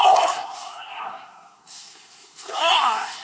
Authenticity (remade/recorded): remade